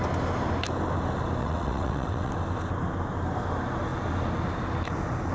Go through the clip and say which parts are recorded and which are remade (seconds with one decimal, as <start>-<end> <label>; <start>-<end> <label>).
0.0-1.4 recorded; 1.4-2.3 remade; 2.3-5.3 recorded